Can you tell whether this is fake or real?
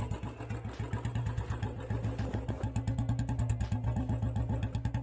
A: real